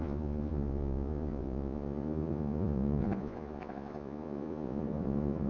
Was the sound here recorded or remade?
remade